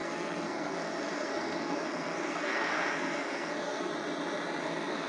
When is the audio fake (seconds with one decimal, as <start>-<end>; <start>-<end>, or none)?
0.0-3.9; 4.6-5.1